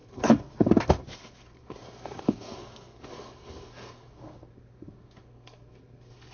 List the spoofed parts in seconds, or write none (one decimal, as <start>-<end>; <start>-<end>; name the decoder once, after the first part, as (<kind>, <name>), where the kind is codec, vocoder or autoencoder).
0.0-6.3 (codec, SNAC)